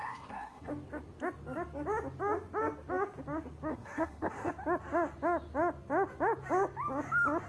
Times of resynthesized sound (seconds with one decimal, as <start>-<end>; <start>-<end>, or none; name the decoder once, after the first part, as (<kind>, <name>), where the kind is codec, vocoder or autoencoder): 0.0-0.7 (codec, SNAC); 3.7-4.5